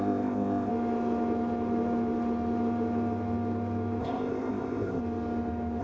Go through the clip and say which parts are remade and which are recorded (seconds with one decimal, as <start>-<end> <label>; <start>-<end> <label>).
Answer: 0.0-0.7 remade; 0.7-4.0 recorded; 4.0-5.0 remade; 5.0-5.8 recorded